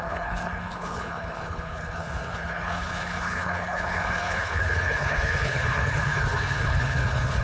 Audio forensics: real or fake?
fake